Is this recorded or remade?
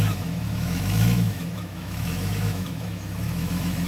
remade